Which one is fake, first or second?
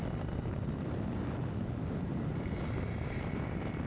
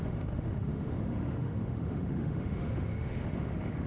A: second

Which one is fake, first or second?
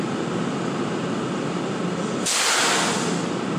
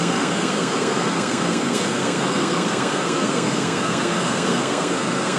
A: second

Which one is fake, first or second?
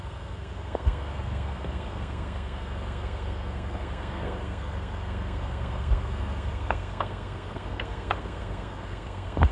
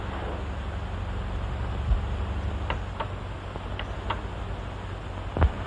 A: first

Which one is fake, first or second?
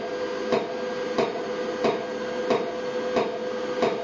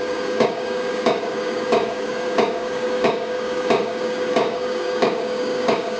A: second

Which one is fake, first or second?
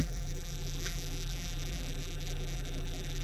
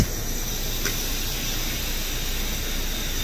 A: first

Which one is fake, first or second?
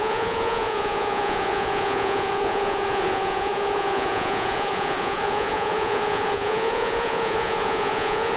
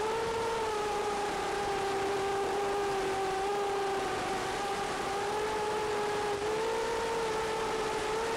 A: first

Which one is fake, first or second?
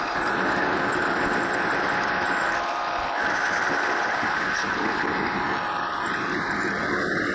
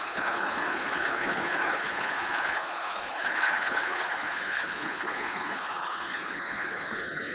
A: second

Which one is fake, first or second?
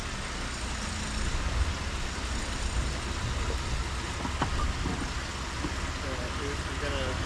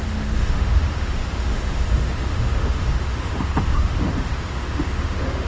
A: second